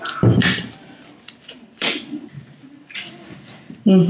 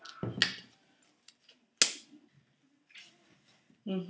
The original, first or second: second